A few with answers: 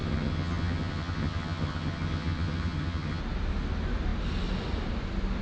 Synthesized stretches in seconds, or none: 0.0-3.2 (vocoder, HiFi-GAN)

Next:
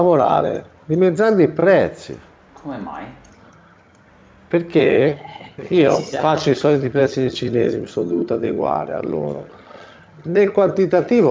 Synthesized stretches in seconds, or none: 0.0-1.6 (vocoder, HiFi-GAN); 3.3-4.1; 4.8-11.3

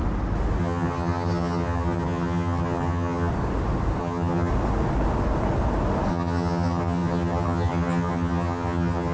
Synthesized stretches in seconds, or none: 0.6-3.3 (vocoder, HiFi-GAN); 4.0-4.5; 6.1-9.1

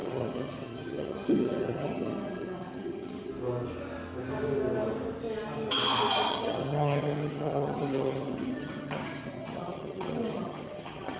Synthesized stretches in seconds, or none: 0.0-3.3 (vocoder, HiFi-GAN); 6.3-11.2

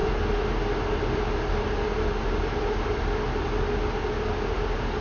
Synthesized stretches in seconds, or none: none

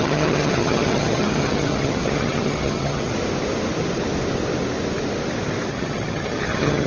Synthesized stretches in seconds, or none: 0.0-3.1 (vocoder, HiFi-GAN); 5.7-6.9

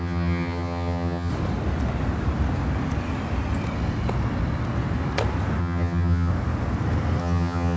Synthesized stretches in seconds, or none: 0.0-1.3 (vocoder, HiFi-GAN); 5.6-6.3; 7.2-7.8